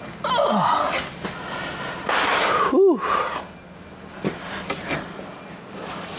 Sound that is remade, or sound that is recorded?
recorded